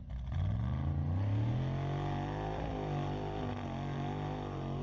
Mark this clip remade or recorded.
recorded